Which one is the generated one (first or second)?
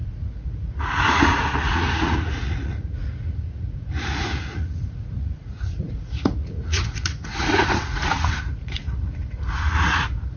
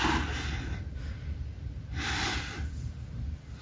first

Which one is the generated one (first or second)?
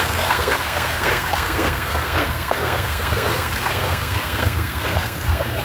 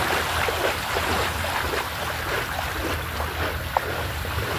first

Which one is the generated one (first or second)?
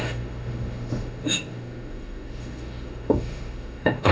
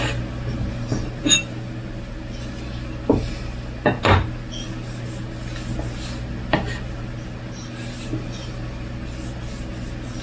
first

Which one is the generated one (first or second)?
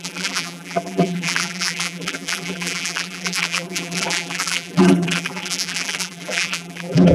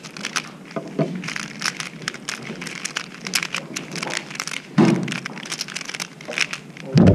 first